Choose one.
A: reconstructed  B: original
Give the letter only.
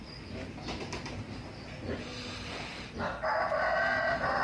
B